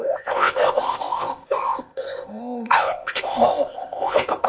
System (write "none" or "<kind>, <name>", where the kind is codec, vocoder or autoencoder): codec, ZipCodec